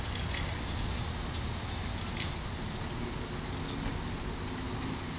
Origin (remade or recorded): recorded